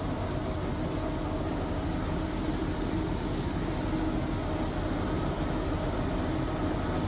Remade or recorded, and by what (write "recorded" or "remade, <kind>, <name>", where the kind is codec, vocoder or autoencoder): recorded